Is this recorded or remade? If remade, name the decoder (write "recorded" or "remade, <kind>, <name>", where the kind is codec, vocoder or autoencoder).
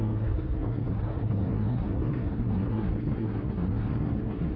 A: remade, codec, SNAC